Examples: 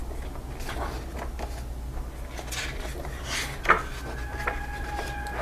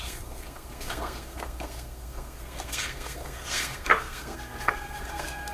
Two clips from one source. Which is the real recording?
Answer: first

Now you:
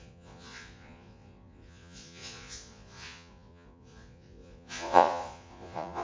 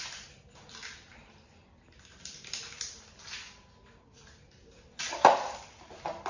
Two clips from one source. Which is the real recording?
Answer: second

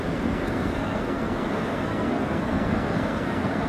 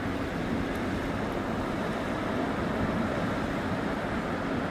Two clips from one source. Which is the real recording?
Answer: second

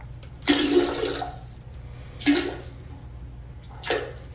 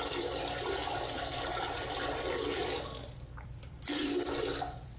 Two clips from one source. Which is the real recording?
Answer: first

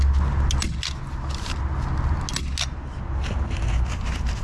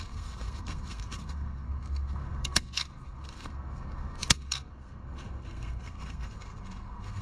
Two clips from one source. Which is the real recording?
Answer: first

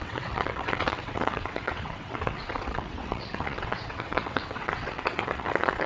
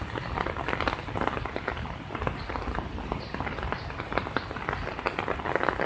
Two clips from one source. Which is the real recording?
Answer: second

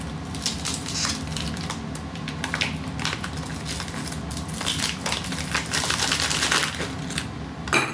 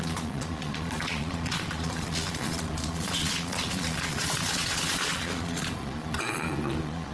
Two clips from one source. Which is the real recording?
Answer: first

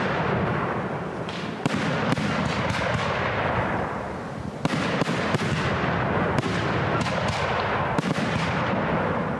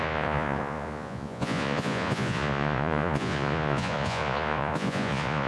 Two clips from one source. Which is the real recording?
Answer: first